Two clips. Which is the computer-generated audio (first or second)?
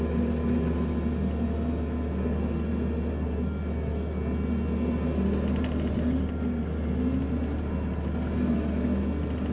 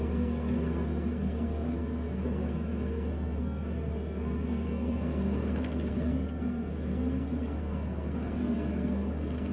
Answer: second